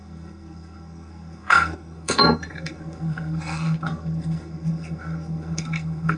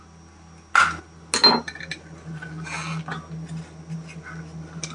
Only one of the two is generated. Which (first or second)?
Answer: first